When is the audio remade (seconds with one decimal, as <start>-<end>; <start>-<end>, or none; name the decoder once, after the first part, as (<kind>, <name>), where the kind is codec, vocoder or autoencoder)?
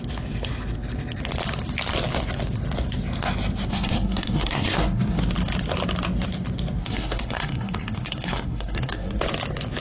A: 3.7-5.2 (codec, SNAC); 6.8-9.2